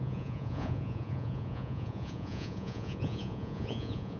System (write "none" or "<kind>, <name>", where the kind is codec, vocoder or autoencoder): vocoder, Vocos